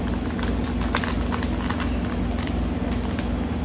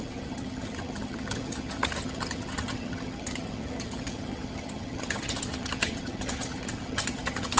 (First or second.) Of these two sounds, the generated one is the second